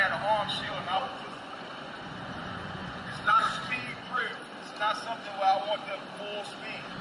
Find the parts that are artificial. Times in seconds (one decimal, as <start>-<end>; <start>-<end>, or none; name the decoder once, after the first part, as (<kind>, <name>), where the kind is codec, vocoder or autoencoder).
0.6-4.2 (vocoder, Vocos)